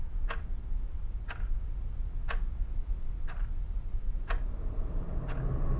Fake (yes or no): no